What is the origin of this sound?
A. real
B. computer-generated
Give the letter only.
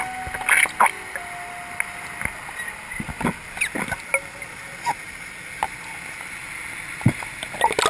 A